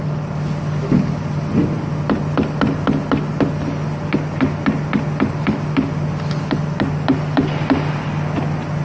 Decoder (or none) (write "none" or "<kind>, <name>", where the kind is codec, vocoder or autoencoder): none